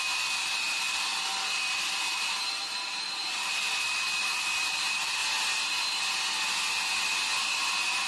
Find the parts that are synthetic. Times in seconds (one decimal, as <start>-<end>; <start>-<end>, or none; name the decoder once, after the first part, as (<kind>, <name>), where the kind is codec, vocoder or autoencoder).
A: 0.0-5.2 (vocoder, BigVGAN v2)